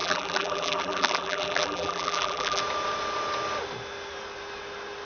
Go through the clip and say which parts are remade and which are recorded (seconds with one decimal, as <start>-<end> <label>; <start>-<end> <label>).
0.0-2.6 remade; 2.6-5.1 recorded